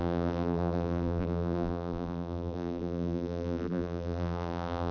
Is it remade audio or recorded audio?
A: remade